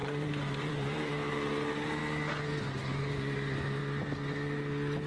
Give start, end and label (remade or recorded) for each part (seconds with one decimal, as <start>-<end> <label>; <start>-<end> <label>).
0.0-2.0 remade; 2.0-2.7 recorded; 2.7-3.8 remade; 3.8-5.1 recorded